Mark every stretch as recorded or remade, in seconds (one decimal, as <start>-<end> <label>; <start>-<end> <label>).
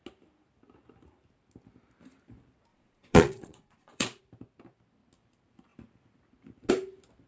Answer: 0.0-2.7 recorded; 2.7-4.2 remade; 4.2-7.3 recorded